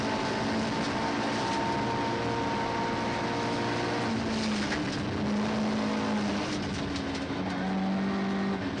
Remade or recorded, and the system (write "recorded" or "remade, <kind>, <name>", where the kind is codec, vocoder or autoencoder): recorded